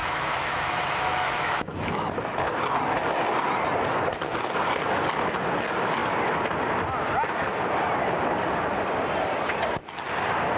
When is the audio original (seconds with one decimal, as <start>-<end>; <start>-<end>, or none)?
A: 2.1-10.6